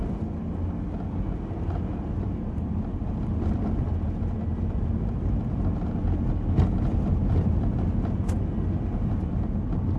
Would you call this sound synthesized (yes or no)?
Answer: no